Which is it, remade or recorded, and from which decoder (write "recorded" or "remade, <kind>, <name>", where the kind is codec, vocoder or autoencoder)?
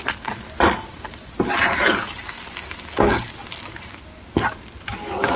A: recorded